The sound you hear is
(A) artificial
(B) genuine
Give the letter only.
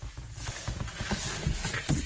B